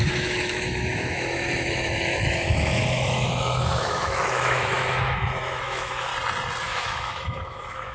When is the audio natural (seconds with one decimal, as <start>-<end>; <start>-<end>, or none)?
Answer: 6.1-6.6

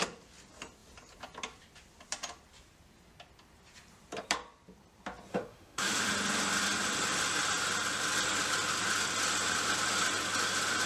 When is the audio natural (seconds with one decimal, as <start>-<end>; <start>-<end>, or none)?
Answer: 0.0-5.3; 6.1-10.9

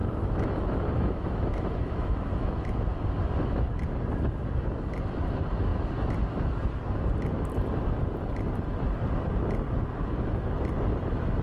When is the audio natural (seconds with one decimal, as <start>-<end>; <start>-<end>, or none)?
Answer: 2.5-11.4

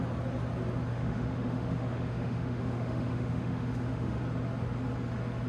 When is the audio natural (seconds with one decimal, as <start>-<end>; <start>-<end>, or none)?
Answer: 0.0-0.9; 4.2-5.5

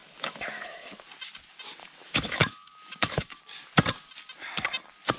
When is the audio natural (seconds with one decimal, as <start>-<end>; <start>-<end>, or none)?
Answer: 0.9-1.8; 3.4-5.2